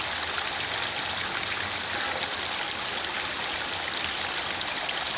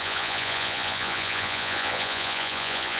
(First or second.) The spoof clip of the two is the second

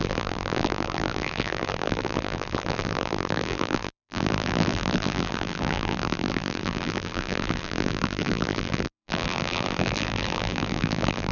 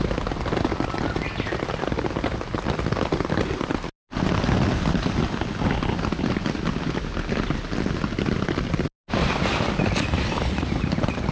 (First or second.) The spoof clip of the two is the first